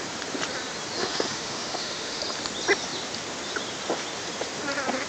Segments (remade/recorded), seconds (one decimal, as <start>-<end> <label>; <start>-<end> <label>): 0.0-1.0 recorded; 1.0-2.2 remade; 2.2-5.1 recorded